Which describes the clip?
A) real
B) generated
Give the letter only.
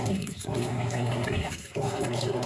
B